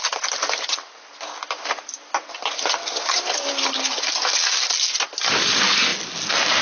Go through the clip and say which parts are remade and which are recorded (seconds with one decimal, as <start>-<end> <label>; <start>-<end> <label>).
0.0-6.6 recorded